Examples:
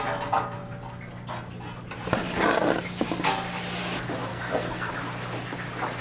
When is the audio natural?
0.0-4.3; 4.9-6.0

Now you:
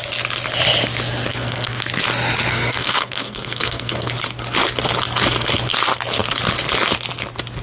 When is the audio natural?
0.0-1.3; 1.8-2.5; 4.1-7.6

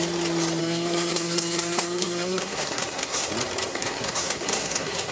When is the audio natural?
0.0-0.6; 3.3-3.7

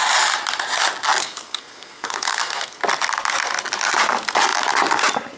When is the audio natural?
0.0-1.2; 2.8-5.4

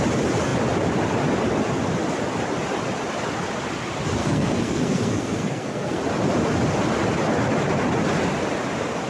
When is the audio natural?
0.0-4.2; 6.0-9.1

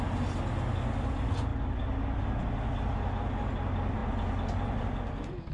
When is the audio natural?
0.0-5.5